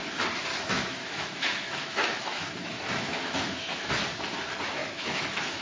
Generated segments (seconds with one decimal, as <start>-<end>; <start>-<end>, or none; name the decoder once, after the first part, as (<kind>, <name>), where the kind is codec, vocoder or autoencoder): 0.5-3.9 (autoencoder, DAC-VAE); 4.8-5.6